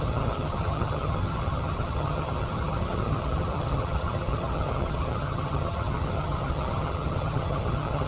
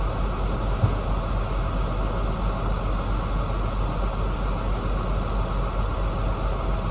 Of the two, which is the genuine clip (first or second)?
second